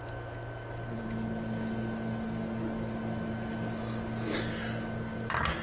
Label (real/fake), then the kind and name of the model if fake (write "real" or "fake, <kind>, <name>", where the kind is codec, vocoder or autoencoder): real